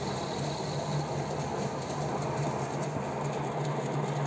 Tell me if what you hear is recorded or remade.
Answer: recorded